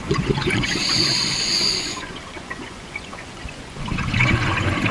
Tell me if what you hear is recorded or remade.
remade